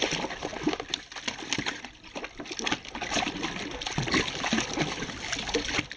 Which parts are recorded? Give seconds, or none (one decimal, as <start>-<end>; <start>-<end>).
0.0-6.0